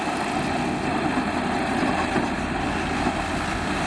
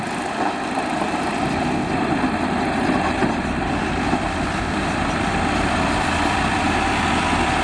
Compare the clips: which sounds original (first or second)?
first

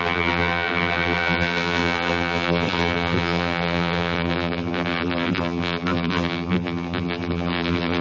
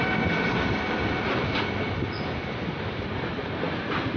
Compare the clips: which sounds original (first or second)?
second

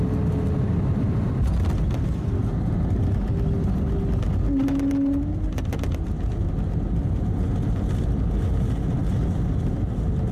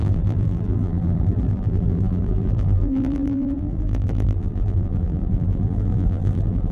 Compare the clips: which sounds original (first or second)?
first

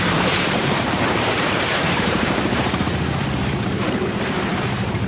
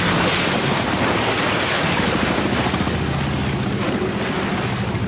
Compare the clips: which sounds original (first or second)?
second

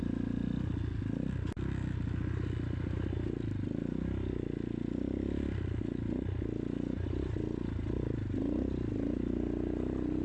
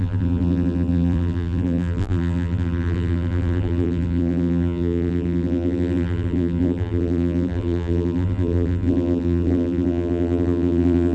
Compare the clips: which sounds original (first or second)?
first